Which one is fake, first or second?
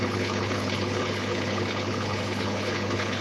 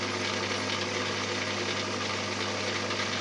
first